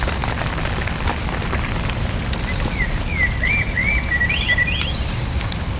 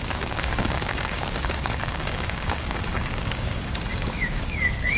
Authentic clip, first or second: first